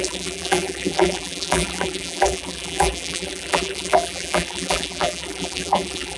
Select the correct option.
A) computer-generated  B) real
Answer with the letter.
A